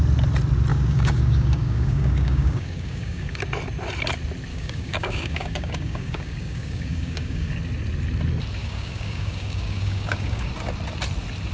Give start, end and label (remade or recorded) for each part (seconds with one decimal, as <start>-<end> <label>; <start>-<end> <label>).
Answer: 0.0-0.7 recorded; 0.7-3.4 remade; 3.4-4.5 recorded; 4.5-7.5 remade; 7.5-8.6 recorded; 8.6-10.5 remade; 10.5-11.5 recorded